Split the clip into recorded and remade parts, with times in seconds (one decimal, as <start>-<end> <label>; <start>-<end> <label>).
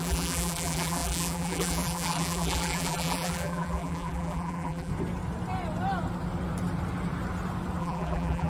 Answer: 0.0-4.9 remade; 4.9-7.8 recorded; 7.8-8.5 remade